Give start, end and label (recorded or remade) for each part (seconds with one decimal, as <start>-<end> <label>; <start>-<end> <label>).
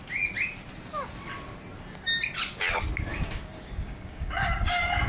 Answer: 0.0-3.1 recorded; 3.1-5.1 remade